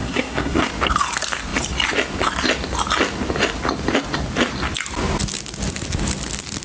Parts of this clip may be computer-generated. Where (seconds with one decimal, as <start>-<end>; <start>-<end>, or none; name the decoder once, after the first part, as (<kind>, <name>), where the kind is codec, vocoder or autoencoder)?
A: 0.0-0.7 (codec, SNAC)